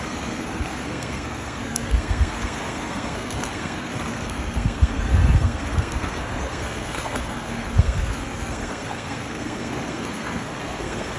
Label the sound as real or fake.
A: fake